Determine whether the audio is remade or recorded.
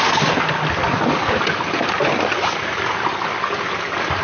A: recorded